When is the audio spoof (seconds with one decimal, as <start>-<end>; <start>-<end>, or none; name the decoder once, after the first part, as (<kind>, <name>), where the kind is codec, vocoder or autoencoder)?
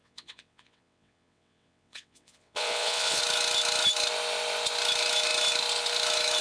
0.0-3.2 (vocoder, WaveNeXt)